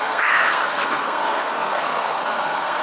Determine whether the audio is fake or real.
fake